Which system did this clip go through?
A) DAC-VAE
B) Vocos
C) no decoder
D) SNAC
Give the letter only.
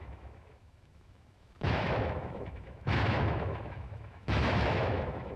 A